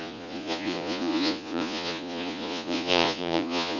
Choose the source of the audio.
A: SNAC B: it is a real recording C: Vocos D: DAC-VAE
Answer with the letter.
C